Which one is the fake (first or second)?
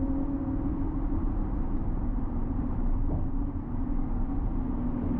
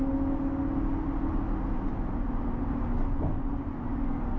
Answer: first